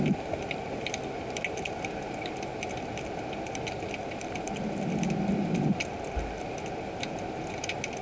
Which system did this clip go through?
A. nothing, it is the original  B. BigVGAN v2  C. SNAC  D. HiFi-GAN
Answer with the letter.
A